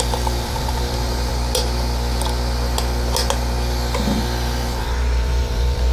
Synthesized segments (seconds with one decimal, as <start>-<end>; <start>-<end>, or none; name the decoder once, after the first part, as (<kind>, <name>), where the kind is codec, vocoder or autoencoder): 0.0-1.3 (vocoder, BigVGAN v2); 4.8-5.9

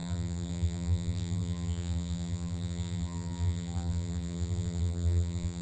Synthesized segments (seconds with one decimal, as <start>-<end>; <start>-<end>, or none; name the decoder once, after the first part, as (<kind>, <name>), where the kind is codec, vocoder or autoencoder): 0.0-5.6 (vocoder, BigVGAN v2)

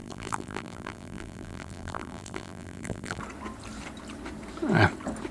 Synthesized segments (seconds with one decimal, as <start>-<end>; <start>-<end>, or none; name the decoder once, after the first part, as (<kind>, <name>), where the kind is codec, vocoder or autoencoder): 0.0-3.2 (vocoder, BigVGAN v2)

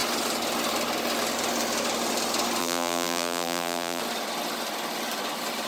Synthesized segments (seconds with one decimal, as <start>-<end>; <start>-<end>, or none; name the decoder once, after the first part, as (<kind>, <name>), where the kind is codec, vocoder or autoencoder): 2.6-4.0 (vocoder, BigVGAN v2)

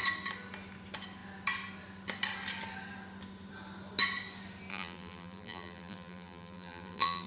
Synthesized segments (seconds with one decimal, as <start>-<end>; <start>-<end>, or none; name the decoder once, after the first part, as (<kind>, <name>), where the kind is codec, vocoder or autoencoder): 4.7-7.3 (vocoder, BigVGAN v2)

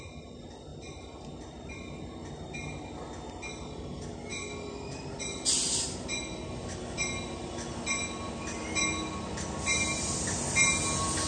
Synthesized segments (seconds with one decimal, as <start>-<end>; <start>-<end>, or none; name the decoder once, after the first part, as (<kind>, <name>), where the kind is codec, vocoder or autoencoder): 0.7-1.7 (vocoder, BigVGAN v2)

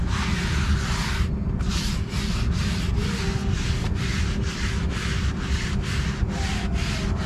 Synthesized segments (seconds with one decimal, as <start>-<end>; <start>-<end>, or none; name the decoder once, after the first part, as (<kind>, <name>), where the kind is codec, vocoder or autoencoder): none